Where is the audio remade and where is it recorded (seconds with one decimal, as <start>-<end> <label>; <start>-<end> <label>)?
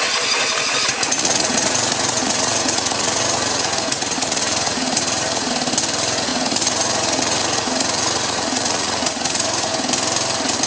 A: 0.0-0.4 recorded; 0.4-5.5 remade; 5.5-6.3 recorded; 6.3-9.7 remade; 9.7-10.7 recorded